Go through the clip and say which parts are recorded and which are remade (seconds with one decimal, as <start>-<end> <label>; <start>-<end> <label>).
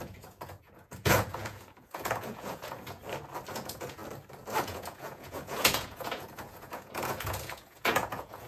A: 0.0-3.0 remade; 3.0-3.5 recorded; 3.5-4.0 remade; 4.0-4.6 recorded; 4.6-8.5 remade